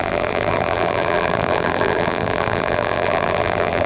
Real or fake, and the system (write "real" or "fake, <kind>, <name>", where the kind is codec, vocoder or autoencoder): fake, vocoder, BigVGAN v2